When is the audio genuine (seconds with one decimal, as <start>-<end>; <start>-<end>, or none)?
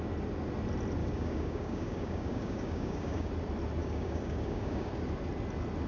0.0-1.0; 3.3-3.8; 4.9-5.9